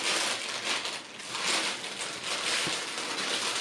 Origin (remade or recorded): recorded